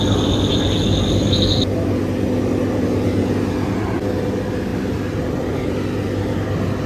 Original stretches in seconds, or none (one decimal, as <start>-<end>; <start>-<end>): 0.0-4.7; 5.6-6.9